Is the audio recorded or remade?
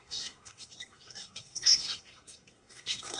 remade